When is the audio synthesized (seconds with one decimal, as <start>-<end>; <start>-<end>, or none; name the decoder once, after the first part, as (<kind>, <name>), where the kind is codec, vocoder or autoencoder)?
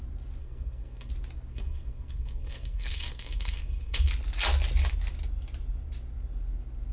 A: 0.4-1.1 (codec, SNAC); 1.5-4.1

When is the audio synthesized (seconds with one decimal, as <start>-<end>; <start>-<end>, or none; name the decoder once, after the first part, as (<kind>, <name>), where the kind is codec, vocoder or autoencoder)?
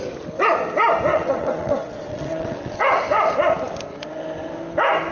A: 1.1-2.8 (vocoder, WaveNeXt)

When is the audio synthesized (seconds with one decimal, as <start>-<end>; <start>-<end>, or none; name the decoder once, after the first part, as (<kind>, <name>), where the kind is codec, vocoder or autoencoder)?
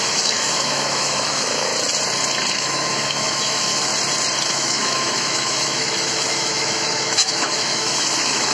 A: 0.0-1.7 (autoencoder, DAC-VAE); 2.5-3.9; 4.5-8.5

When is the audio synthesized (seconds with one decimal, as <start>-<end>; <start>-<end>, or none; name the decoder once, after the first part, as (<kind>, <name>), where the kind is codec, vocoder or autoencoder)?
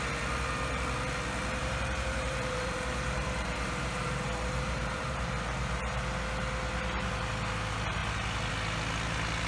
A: 1.6-5.3 (vocoder, BigVGAN v2)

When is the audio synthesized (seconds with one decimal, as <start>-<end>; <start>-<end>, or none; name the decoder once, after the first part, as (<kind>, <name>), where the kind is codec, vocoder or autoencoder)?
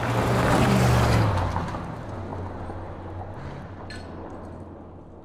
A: none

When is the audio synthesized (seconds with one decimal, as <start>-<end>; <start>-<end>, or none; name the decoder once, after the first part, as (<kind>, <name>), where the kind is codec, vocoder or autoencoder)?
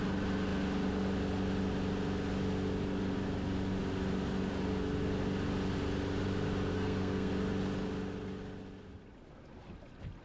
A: 6.7-7.3 (codec, SNAC)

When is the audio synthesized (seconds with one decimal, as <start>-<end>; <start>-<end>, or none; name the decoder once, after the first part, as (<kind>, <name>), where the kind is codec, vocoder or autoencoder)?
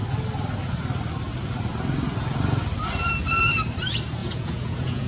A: 4.2-5.1 (vocoder, Vocos)